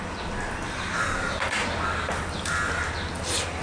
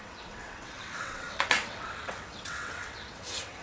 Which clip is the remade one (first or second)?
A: second